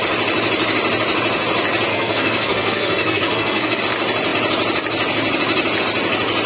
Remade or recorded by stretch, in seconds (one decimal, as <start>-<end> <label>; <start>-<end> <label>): 0.0-1.9 recorded; 1.9-3.8 remade; 3.8-6.5 recorded